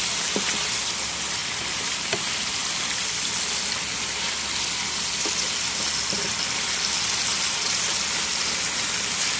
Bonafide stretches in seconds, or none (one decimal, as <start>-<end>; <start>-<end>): 0.0-9.4